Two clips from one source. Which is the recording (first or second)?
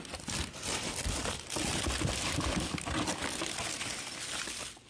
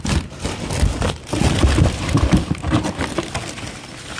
first